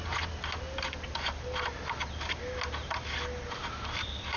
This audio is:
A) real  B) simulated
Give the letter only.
A